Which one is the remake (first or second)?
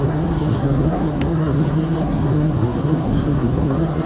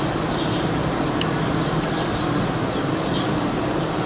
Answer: first